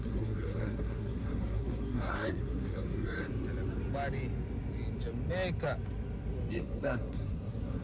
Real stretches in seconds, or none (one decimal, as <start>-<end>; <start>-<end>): 3.3-6.5